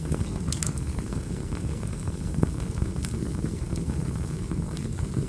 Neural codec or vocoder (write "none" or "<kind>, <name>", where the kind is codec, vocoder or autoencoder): codec, SNAC